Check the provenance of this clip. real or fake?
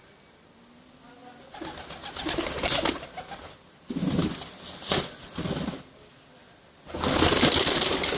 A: real